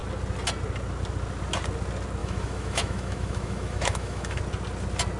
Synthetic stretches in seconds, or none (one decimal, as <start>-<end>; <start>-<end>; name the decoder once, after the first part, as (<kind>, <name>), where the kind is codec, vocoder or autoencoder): 2.2-4.4 (autoencoder, DAC-VAE)